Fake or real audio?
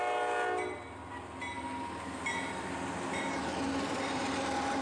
real